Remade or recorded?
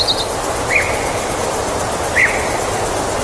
recorded